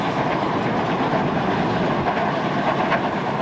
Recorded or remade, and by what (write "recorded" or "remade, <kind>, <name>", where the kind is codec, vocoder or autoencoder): recorded